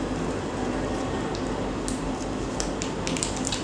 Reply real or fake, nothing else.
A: real